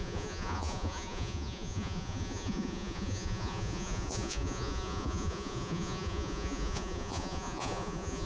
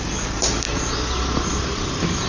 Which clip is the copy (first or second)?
first